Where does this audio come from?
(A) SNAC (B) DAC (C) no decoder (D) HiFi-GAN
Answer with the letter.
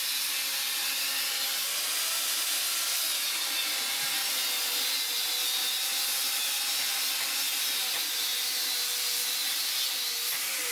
C